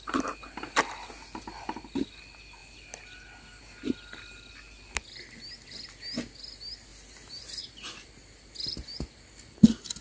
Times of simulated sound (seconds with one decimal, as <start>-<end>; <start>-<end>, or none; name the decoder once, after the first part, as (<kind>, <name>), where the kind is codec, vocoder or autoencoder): none